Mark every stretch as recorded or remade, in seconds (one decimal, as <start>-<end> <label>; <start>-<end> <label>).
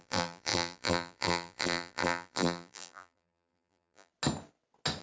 0.0-4.1 remade; 4.1-5.0 recorded